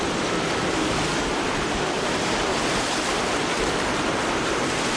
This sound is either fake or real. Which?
fake